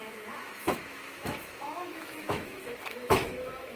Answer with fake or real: fake